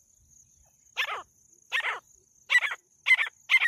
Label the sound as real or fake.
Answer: real